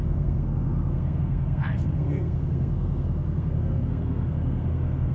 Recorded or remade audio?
remade